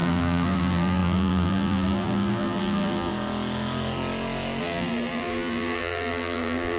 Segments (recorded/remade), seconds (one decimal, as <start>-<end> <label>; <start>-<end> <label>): 0.0-3.1 remade; 3.1-4.6 recorded; 4.6-6.8 remade